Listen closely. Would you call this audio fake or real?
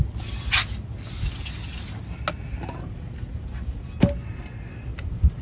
real